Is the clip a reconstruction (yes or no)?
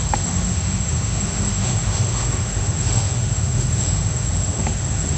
yes